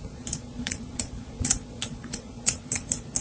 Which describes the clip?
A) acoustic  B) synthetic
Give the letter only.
B